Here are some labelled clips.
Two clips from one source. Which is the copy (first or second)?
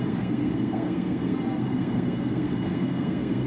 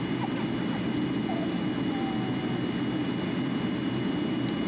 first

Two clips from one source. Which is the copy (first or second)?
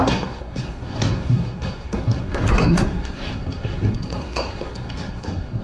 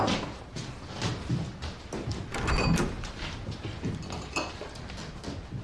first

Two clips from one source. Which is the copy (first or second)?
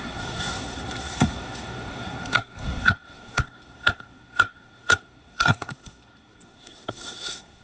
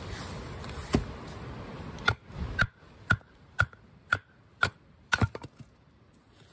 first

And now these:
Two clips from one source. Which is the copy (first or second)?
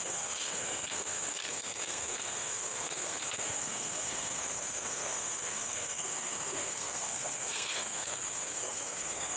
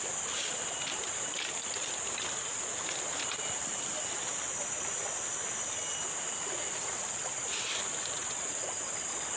first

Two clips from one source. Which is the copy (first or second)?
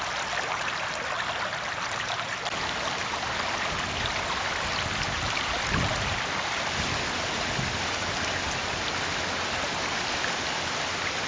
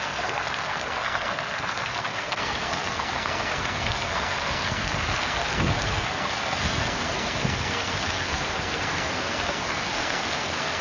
second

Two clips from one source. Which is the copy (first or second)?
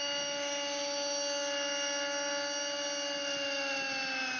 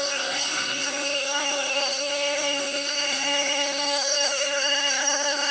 second